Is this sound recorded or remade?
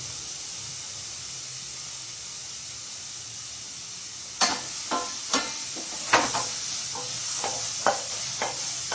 recorded